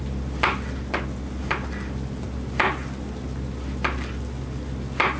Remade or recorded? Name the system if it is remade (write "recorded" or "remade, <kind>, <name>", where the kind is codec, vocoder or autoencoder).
recorded